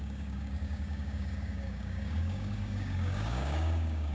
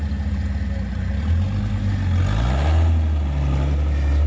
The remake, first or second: first